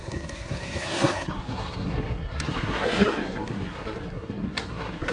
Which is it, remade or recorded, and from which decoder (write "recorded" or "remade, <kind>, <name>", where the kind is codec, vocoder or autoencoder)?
remade, codec, SNAC